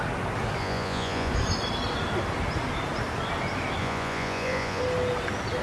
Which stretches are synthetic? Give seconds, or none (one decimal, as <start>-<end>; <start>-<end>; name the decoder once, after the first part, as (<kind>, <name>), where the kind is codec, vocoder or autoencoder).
0.6-1.3 (vocoder, Vocos); 3.8-4.8